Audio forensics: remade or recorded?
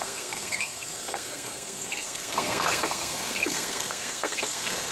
remade